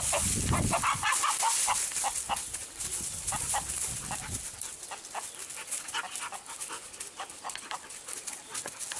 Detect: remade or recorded recorded